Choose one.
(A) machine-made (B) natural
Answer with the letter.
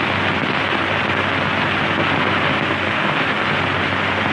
B